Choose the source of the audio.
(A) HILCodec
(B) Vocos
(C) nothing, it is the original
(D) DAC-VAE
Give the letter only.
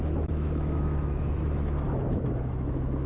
D